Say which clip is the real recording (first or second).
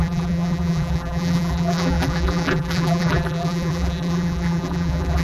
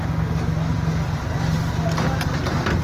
second